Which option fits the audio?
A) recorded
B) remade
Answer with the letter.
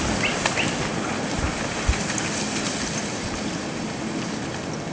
A